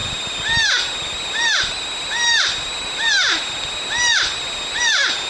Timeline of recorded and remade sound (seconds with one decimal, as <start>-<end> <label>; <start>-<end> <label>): 0.0-5.3 recorded